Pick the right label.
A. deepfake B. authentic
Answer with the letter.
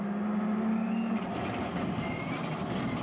B